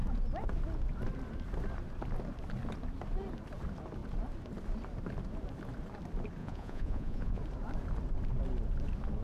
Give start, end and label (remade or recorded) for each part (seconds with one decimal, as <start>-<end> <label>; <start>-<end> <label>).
0.0-6.4 recorded; 6.4-7.4 remade; 7.4-9.2 recorded